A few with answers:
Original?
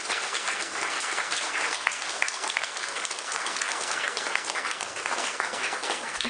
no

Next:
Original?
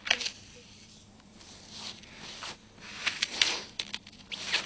yes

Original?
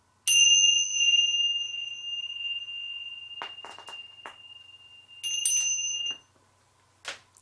yes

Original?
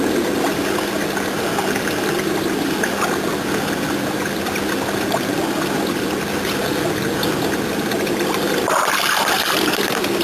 yes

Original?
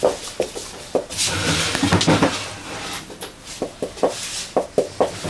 yes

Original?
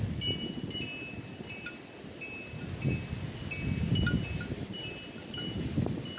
yes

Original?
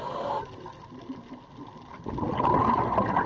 yes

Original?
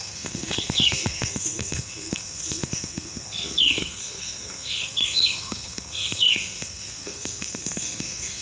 no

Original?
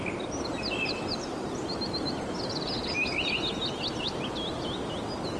yes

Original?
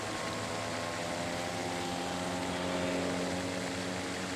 yes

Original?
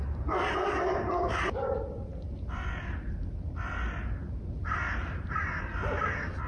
yes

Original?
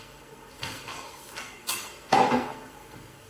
no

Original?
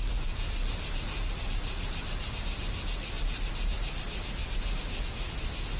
yes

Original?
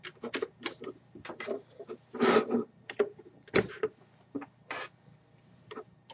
yes